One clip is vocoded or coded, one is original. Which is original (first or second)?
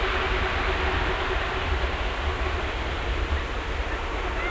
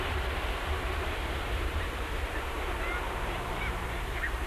first